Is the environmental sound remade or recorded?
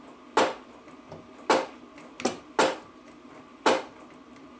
recorded